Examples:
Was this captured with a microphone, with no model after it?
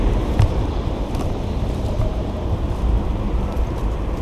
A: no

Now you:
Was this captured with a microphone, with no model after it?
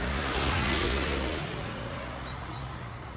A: no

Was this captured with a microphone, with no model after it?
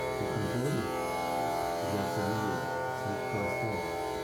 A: yes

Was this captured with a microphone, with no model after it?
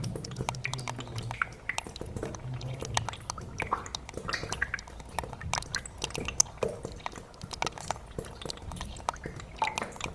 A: yes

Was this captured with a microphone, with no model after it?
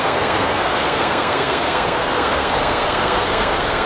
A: no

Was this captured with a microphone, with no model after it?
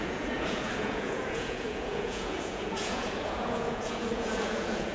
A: no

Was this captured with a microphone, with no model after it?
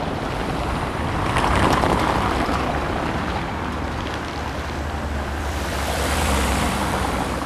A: no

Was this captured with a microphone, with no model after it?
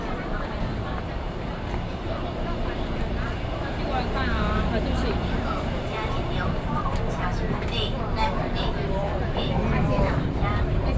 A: no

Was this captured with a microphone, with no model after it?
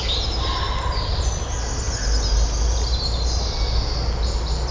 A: yes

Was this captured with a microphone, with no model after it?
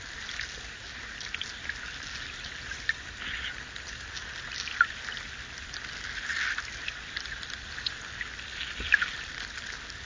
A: yes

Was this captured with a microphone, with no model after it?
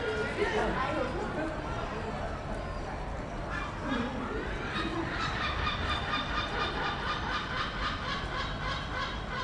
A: yes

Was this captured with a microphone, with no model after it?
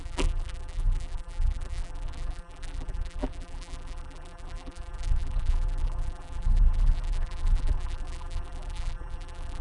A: no